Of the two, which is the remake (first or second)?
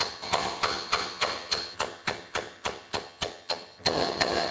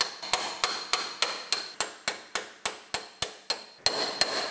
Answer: first